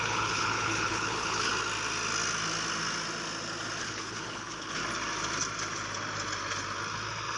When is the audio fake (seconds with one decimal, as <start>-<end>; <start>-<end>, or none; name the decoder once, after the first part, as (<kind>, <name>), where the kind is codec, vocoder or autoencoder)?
0.0-1.5 (codec, HILCodec); 3.8-4.8